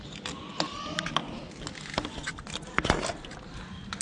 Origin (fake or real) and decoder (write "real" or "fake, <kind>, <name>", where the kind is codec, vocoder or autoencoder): real